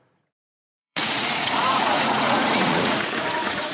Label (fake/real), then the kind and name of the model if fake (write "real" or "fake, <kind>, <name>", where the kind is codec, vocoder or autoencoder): fake, vocoder, Vocos